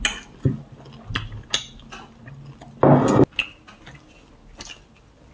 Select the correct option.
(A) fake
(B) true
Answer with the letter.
B